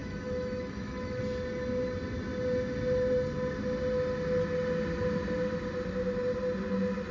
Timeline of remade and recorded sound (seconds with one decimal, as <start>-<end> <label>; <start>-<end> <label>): 0.0-1.2 remade; 1.2-7.1 recorded